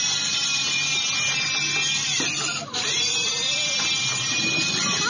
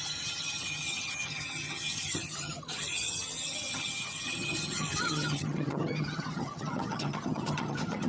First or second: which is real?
first